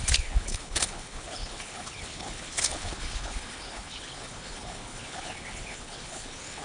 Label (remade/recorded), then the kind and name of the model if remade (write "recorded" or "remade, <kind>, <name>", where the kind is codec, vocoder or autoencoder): remade, codec, HILCodec